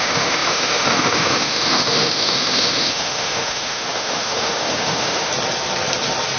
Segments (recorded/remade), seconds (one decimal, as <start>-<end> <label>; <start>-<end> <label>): 0.0-5.3 remade; 5.3-6.4 recorded

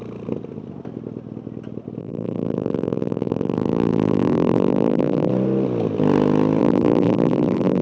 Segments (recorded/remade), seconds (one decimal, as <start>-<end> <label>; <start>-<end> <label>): 0.0-2.0 recorded; 2.0-5.3 remade; 5.3-6.6 recorded; 6.6-7.8 remade

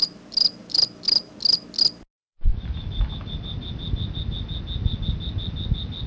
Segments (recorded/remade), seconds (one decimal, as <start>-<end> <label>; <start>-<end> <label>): 0.0-6.1 recorded

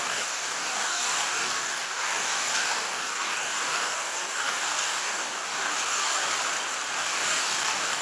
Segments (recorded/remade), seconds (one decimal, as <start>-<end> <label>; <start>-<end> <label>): 0.0-6.3 remade; 6.3-7.0 recorded; 7.0-8.0 remade

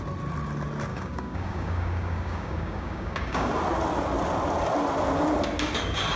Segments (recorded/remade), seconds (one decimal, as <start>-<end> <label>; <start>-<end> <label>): 0.0-0.9 recorded; 0.9-3.5 remade; 3.5-6.2 recorded

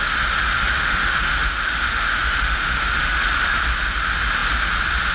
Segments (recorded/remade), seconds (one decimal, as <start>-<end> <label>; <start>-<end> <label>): 0.0-0.5 recorded; 0.5-3.6 remade; 3.6-5.1 recorded

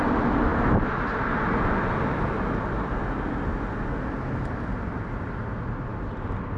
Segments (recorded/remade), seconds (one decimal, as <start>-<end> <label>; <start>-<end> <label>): 0.0-6.6 recorded